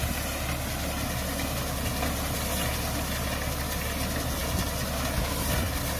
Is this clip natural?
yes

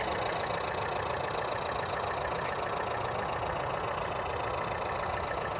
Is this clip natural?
yes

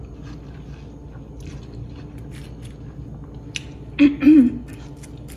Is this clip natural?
yes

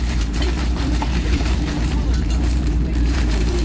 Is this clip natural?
no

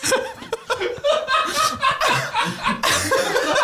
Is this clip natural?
yes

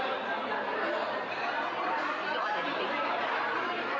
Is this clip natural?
no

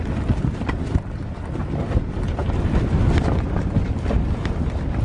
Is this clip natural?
yes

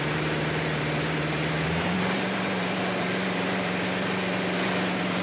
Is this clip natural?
no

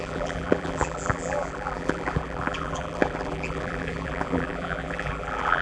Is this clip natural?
no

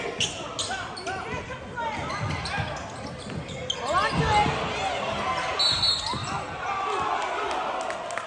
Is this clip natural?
yes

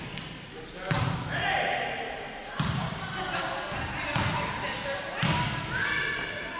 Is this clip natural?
yes